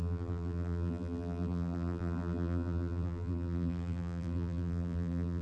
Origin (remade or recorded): remade